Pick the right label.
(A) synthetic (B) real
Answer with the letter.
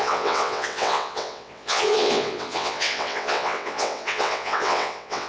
A